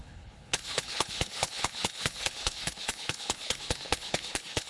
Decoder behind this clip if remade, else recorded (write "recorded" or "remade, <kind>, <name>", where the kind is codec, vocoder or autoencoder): remade, codec, HILCodec